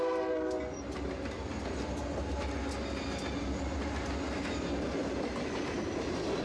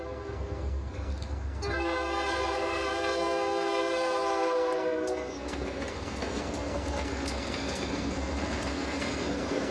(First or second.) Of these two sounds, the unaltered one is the first